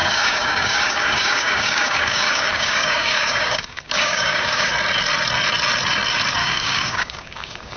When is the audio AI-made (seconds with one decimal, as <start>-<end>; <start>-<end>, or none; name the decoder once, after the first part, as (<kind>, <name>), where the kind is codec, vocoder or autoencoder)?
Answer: 0.0-4.7 (codec, DAC); 6.4-7.8